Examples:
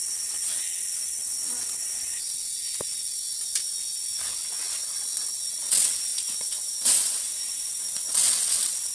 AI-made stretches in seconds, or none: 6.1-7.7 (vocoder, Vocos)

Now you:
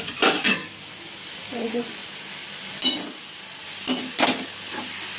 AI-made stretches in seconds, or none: 0.0-0.6 (vocoder, Vocos); 1.5-2.0

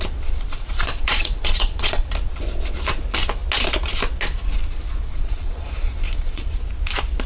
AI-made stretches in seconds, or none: 0.5-2.1 (vocoder, Vocos); 5.1-6.6

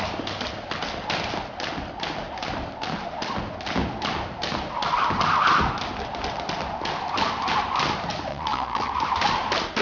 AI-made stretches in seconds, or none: 8.3-8.9 (vocoder, Vocos)

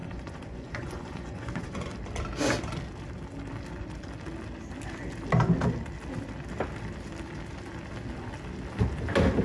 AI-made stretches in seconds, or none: 0.0-1.9 (vocoder, Vocos)

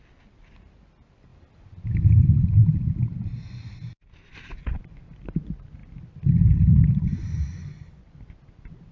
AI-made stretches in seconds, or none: 7.1-8.1 (vocoder, Vocos)

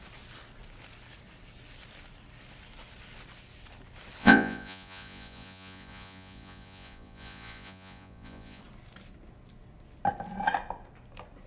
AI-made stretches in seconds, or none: 4.2-8.6 (vocoder, Vocos)

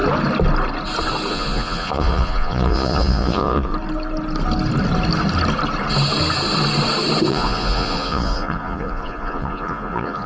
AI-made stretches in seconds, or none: 1.3-3.7 (vocoder, Vocos); 7.3-10.3